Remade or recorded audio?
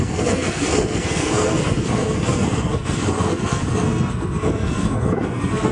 remade